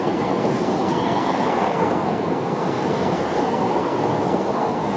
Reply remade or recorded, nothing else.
remade